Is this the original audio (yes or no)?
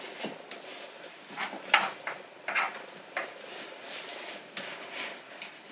yes